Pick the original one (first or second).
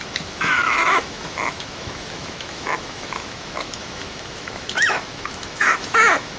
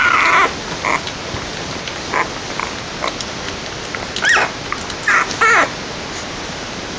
second